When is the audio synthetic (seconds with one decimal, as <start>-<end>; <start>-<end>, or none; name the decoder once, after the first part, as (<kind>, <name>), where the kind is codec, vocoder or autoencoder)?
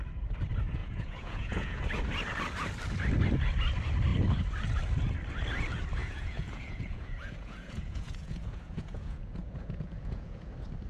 0.8-1.8 (vocoder, Vocos); 6.0-10.5